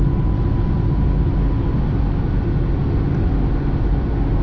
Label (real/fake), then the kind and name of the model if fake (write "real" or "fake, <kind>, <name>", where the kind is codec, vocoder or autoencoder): real